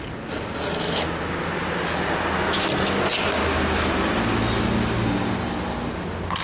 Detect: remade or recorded recorded